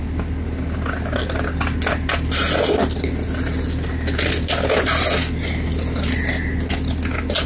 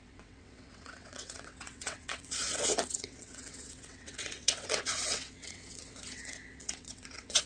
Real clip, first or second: first